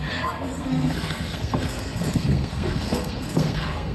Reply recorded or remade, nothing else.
remade